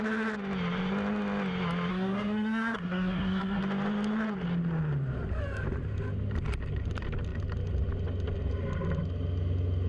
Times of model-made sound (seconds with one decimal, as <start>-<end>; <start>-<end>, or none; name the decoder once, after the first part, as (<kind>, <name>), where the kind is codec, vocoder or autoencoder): 1.9-3.6 (codec, SNAC)